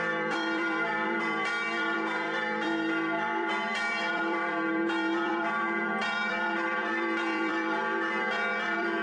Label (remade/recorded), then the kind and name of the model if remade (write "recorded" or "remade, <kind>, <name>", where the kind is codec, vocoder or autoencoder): remade, vocoder, BigVGAN v2